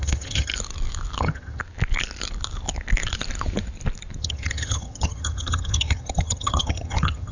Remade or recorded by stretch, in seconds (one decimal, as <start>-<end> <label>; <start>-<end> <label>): 0.0-0.5 remade; 0.5-1.2 recorded; 1.2-1.6 remade; 1.6-4.2 recorded; 4.2-7.3 remade